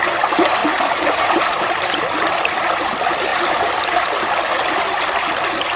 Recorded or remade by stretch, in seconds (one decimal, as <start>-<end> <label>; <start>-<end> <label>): 0.0-0.6 recorded; 0.6-2.0 remade; 2.0-3.3 recorded; 3.3-4.3 remade; 4.3-5.8 recorded